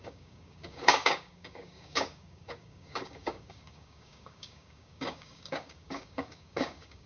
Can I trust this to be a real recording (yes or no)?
no